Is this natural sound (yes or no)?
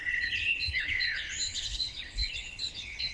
no